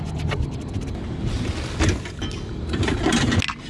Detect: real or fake real